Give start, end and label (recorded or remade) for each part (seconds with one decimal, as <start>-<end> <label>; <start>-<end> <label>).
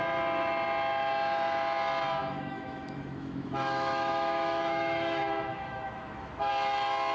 0.0-2.2 recorded; 2.2-6.5 remade; 6.5-7.1 recorded